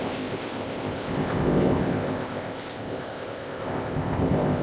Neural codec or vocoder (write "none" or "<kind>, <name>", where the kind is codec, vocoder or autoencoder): codec, ZipCodec